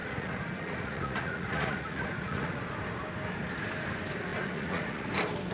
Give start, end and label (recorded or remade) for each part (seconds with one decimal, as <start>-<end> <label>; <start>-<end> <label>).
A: 0.0-2.6 remade; 2.6-4.3 recorded; 4.3-5.1 remade; 5.1-5.5 recorded